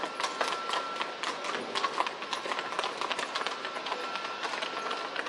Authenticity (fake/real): real